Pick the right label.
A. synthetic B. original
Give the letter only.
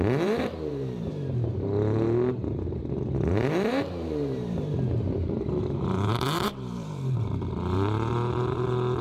A